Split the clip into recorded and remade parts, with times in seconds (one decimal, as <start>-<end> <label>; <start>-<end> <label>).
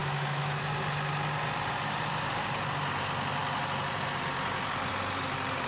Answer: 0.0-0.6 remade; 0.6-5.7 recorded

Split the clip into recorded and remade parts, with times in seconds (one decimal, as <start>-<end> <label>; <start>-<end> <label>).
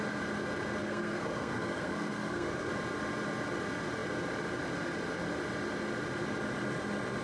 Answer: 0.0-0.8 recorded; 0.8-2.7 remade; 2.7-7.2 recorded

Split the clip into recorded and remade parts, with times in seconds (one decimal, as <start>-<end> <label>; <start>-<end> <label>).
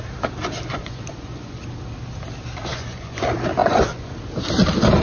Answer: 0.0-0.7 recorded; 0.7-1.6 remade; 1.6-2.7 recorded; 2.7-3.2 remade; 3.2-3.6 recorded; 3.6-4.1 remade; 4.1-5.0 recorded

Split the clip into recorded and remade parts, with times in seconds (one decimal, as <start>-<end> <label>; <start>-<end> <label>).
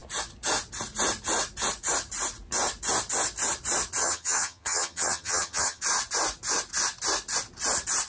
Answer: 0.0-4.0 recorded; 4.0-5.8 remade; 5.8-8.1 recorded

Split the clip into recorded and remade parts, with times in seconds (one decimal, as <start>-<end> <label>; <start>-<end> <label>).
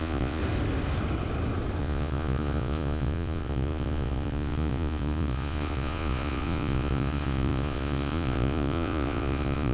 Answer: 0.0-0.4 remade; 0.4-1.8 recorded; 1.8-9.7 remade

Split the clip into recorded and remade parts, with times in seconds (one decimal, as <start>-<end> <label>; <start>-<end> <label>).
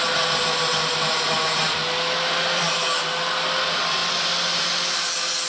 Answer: 0.0-5.5 recorded